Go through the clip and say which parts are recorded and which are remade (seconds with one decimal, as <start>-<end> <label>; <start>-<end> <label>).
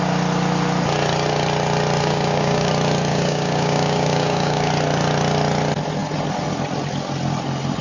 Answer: 0.0-2.0 recorded; 2.0-2.7 remade; 2.7-3.1 recorded; 3.1-4.7 remade; 4.7-7.8 recorded